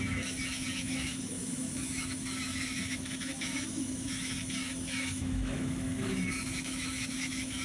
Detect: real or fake fake